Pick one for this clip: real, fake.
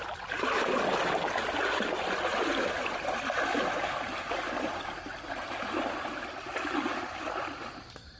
real